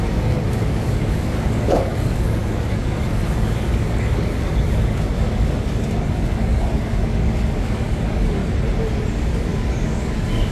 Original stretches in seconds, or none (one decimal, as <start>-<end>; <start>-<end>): 8.4-9.1